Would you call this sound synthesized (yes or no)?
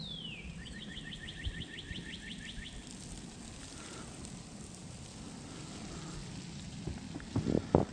no